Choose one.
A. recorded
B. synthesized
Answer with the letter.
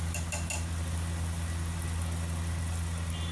A